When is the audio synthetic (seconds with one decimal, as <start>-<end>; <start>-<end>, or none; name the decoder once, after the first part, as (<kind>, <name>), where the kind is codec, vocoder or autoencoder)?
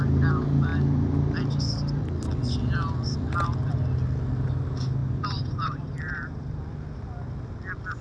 5.0-6.6 (vocoder, BigVGAN v2)